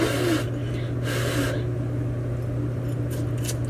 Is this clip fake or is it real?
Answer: real